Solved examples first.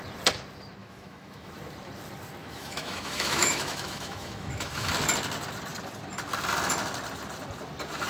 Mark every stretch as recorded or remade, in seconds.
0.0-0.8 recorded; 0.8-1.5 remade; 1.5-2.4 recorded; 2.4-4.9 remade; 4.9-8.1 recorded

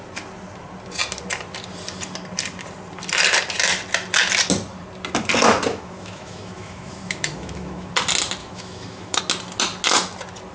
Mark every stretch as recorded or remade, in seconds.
0.0-5.7 recorded; 5.7-7.9 remade; 7.9-8.4 recorded; 8.4-9.2 remade; 9.2-10.5 recorded

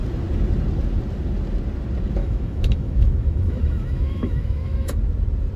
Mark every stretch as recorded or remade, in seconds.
0.0-2.2 recorded; 2.2-5.0 remade; 5.0-5.6 recorded